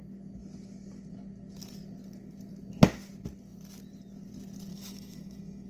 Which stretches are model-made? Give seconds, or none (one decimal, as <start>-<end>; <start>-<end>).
4.7-5.7